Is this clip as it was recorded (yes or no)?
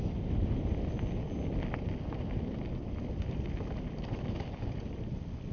yes